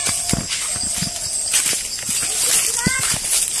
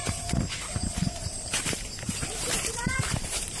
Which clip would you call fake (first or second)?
second